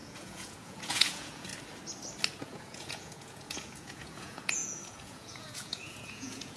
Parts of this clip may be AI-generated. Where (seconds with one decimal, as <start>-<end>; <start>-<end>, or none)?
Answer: 0.0-1.5; 2.4-6.6